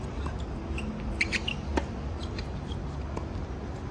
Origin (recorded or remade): recorded